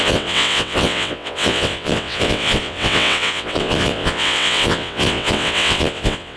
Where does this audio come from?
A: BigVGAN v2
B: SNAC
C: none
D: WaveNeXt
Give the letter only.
D